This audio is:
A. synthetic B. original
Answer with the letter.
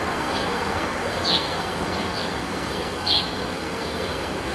A